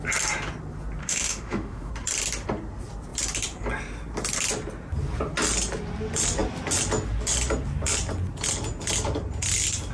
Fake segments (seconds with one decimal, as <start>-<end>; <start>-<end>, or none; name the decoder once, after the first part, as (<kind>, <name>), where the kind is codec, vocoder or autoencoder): 1.0-1.9 (autoencoder, DAC-VAE)